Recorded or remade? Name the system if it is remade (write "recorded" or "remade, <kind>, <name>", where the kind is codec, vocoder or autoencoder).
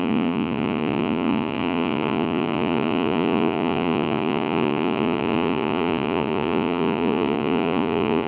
remade, vocoder, Vocos